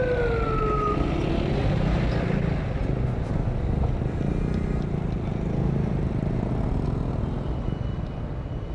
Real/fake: real